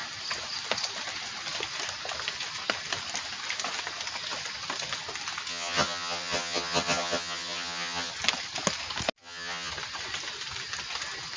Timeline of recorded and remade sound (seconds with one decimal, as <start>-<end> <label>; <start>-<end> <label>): 0.0-5.5 recorded; 5.5-8.1 remade; 8.1-9.2 recorded; 9.2-9.7 remade; 9.7-11.4 recorded